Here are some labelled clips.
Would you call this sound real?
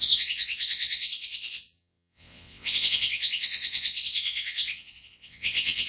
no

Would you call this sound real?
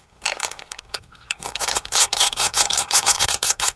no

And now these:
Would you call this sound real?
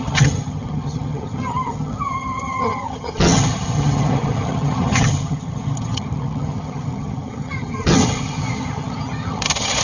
no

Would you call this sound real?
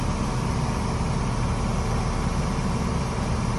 yes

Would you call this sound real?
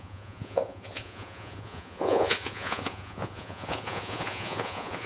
no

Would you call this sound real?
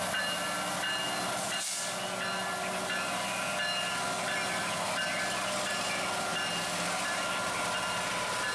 yes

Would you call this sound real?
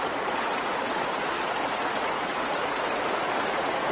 no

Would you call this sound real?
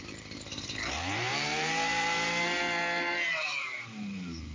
no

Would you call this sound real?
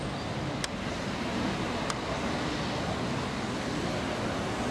yes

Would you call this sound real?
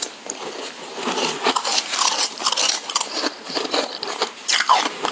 no